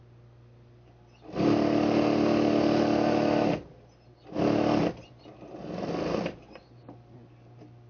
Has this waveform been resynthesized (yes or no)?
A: no